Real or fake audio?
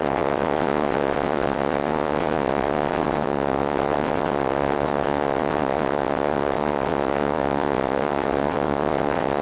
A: fake